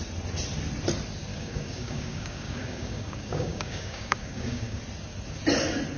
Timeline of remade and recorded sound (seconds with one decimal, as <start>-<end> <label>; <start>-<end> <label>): 0.0-1.3 recorded; 1.3-4.8 remade; 4.8-6.0 recorded